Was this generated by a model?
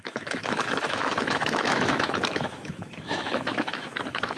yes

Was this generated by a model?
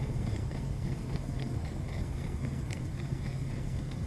yes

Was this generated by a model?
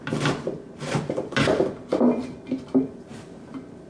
no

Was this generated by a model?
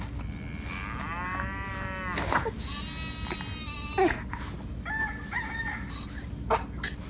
no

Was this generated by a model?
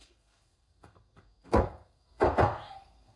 yes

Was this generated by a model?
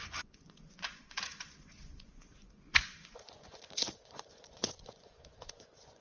yes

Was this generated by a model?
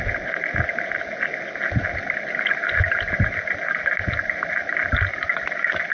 no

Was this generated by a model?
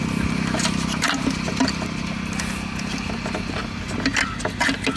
no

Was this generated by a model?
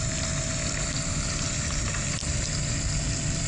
no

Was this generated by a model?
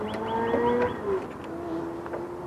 no